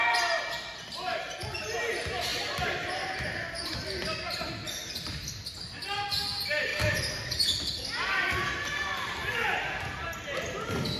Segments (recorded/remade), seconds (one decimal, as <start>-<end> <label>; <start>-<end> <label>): 0.0-11.0 recorded